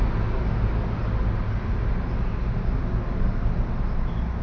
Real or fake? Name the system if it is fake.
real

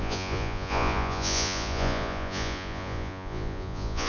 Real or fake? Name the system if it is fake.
fake, vocoder, Vocos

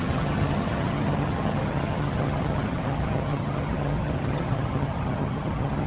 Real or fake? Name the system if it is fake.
fake, vocoder, HiFi-GAN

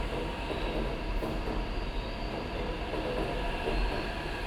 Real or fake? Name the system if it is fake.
real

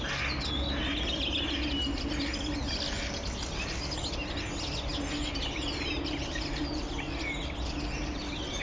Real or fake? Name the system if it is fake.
real